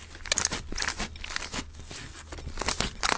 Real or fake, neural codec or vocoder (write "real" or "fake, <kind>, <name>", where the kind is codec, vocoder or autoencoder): real